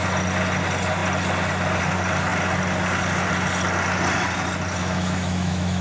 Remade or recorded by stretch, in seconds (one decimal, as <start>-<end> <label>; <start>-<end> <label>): 0.0-4.8 recorded; 4.8-5.8 remade